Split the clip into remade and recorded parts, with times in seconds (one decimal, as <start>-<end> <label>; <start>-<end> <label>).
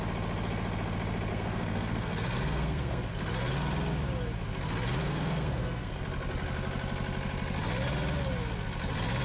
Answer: 0.0-1.3 recorded; 1.3-3.1 remade; 3.1-5.0 recorded; 5.0-6.0 remade; 6.0-9.2 recorded